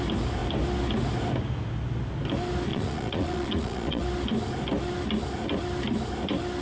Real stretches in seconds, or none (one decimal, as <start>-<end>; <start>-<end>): 0.0-2.7; 4.0-6.6